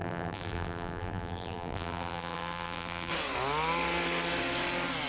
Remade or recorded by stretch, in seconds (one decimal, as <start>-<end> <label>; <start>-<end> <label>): 0.0-3.1 remade; 3.1-5.1 recorded